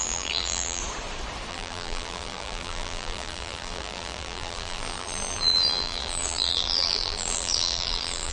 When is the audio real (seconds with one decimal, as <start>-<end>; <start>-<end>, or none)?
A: 0.8-1.5